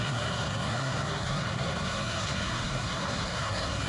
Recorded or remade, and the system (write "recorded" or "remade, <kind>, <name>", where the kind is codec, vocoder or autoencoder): remade, codec, SNAC